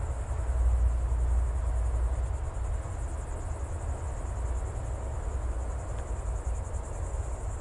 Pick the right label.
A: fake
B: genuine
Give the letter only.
B